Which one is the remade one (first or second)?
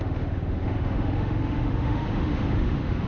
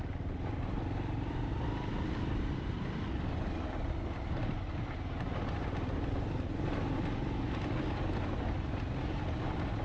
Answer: first